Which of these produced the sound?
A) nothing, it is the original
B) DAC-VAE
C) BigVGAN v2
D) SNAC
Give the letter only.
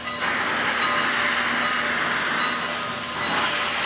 A